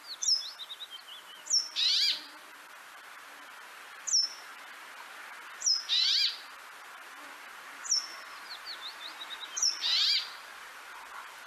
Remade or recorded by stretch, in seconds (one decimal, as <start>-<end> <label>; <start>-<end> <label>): 0.0-11.5 recorded